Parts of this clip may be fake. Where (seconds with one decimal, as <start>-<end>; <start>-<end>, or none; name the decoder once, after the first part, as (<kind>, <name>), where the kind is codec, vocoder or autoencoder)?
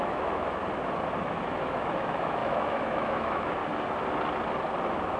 0.0-0.6 (autoencoder, DAC-VAE); 1.2-3.6